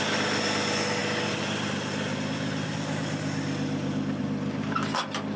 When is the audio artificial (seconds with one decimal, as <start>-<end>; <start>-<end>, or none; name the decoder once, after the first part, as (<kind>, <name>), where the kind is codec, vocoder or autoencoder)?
none